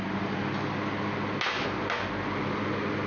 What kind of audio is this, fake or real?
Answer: real